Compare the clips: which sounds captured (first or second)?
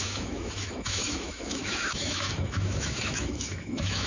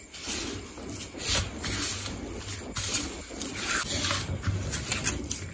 second